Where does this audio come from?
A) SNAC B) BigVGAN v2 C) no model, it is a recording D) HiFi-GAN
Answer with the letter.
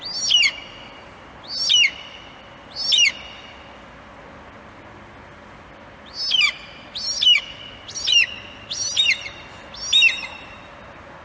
C